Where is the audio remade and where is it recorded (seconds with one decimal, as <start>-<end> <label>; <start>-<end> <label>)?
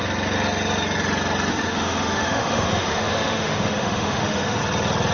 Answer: 0.0-1.5 recorded; 1.5-4.6 remade; 4.6-5.1 recorded